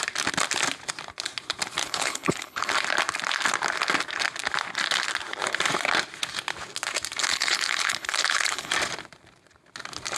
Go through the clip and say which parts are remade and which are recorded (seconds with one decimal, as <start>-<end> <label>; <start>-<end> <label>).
0.0-1.8 recorded; 1.8-2.7 remade; 2.7-7.2 recorded; 7.2-8.7 remade; 8.7-10.2 recorded